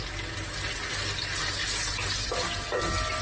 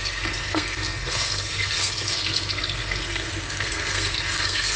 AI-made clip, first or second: second